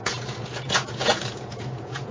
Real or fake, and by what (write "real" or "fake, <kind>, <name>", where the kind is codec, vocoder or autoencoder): fake, vocoder, Vocos